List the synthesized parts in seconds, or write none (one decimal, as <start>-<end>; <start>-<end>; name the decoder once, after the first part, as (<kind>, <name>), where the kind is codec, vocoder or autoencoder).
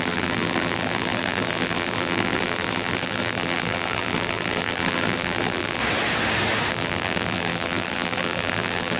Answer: 0.0-5.8 (vocoder, BigVGAN v2); 6.7-9.0